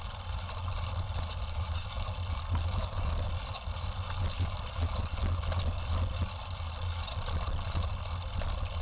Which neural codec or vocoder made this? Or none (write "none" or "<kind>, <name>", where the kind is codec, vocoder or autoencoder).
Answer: none